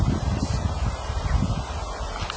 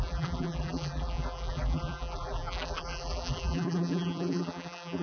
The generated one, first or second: second